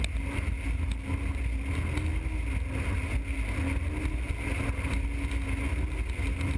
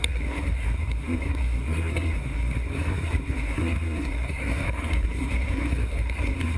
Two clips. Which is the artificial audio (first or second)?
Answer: second